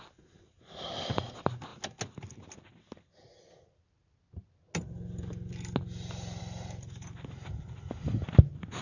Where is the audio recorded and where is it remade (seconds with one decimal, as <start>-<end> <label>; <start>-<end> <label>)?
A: 0.0-8.8 recorded